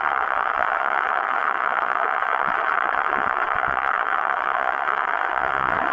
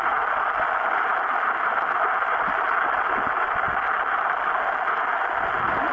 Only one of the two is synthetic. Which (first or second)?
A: first